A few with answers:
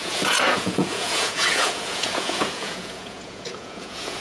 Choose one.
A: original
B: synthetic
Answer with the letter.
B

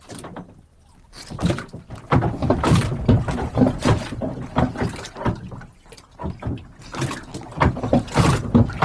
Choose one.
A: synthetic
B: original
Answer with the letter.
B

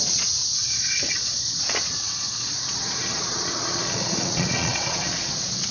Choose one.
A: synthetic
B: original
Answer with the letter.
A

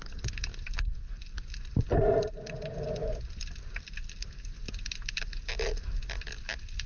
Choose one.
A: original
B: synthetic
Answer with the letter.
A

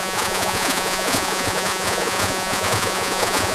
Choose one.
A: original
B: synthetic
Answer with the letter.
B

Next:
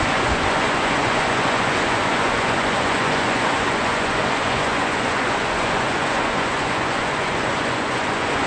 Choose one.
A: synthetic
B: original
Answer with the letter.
A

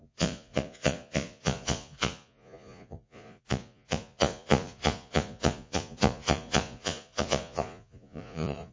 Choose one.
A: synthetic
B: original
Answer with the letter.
A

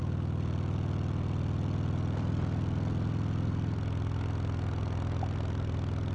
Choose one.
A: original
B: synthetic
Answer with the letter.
A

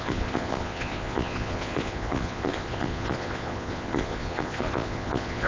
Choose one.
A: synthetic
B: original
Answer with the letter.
A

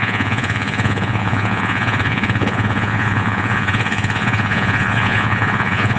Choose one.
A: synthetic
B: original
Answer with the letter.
A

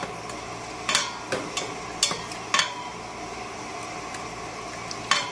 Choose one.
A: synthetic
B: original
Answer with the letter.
B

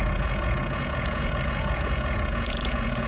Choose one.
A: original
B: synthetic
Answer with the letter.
B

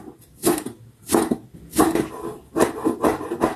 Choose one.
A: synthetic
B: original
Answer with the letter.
B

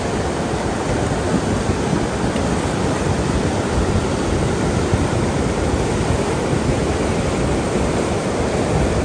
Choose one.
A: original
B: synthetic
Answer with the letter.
A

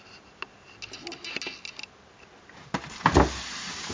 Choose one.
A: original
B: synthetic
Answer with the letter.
A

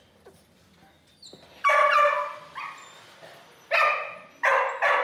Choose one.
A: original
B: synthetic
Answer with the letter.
A